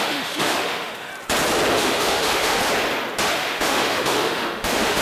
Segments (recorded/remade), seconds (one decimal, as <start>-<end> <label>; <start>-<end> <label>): 0.0-1.1 remade; 1.1-1.7 recorded; 1.7-2.6 remade; 2.6-3.3 recorded; 3.3-5.0 remade